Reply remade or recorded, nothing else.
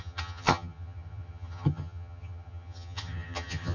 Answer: remade